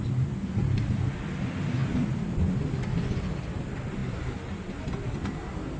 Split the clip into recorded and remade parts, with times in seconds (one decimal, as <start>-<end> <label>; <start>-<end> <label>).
0.0-5.8 recorded